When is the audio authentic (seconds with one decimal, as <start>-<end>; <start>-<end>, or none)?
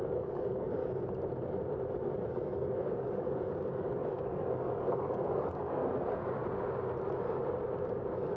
0.8-2.3; 5.8-7.9